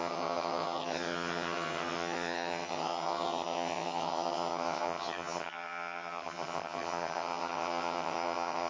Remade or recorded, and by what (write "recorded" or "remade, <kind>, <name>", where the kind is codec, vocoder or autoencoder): remade, vocoder, HiFi-GAN